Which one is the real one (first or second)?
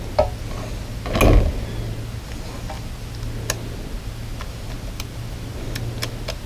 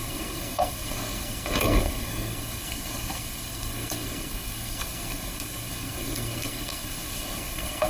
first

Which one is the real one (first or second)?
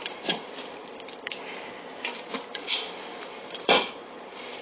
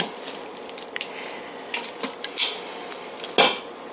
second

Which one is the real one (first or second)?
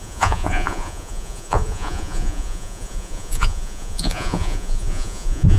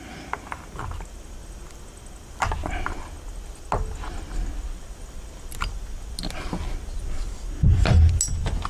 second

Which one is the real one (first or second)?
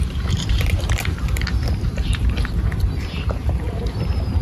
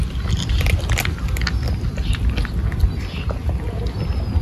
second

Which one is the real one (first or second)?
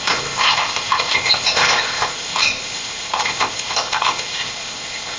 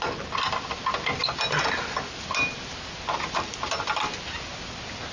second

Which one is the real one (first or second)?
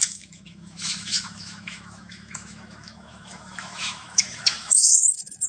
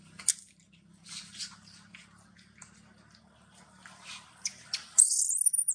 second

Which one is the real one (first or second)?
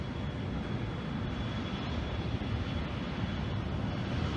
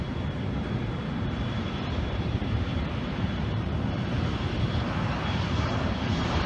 first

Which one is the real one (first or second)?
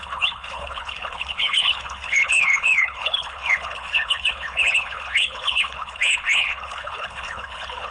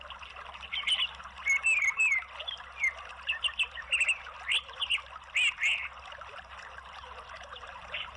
second